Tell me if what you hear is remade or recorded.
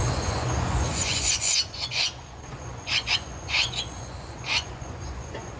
remade